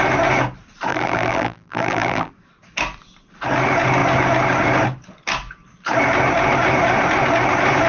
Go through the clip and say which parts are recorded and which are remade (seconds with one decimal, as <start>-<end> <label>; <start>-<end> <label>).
0.0-0.9 recorded; 0.9-2.3 remade; 2.3-7.9 recorded